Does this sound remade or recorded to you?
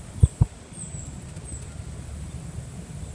recorded